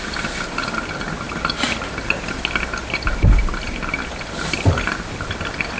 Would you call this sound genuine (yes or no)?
no